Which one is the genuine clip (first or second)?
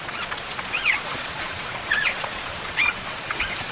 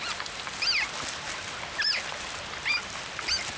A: second